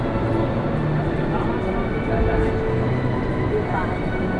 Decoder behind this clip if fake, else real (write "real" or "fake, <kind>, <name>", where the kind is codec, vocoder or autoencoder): real